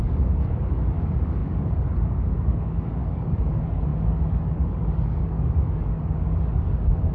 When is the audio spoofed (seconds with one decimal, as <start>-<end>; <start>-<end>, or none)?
0.0-7.1